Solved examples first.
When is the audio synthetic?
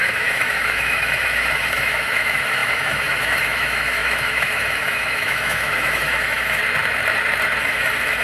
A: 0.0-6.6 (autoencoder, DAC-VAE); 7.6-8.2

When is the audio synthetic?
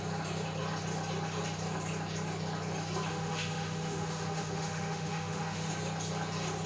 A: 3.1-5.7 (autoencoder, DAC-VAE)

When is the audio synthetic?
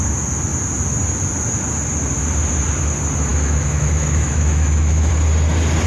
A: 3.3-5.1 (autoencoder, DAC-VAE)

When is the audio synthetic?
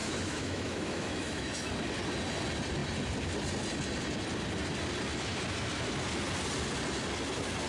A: 0.0-1.7 (autoencoder, DAC-VAE)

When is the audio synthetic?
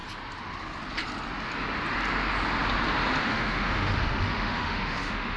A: 3.2-5.4 (autoencoder, DAC-VAE)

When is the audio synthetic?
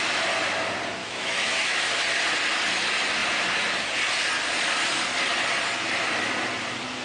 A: 1.0-1.8 (autoencoder, DAC-VAE)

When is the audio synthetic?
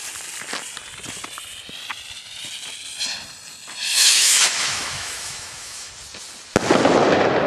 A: 3.8-5.9 (autoencoder, DAC-VAE)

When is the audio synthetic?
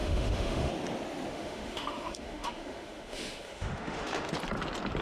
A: 0.0-0.7 (autoencoder, DAC-VAE); 1.3-4.3